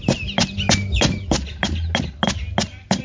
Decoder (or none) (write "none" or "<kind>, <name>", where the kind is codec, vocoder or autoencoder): none